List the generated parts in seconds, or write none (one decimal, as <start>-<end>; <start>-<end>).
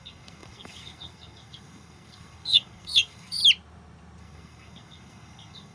0.0-3.4; 4.2-5.7